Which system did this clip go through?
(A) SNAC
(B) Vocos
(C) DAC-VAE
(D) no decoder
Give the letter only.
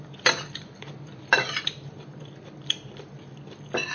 D